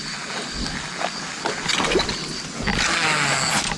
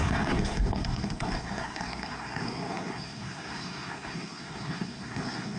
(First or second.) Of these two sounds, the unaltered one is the first